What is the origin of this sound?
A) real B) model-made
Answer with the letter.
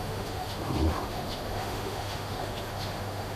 B